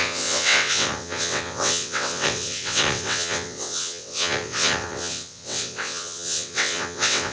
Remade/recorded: remade